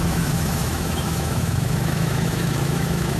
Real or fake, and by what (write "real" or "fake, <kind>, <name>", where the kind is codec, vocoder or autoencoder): fake, autoencoder, DAC-VAE